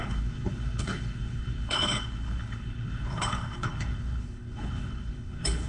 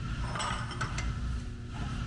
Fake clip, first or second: first